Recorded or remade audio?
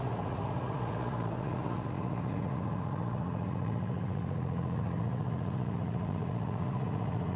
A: remade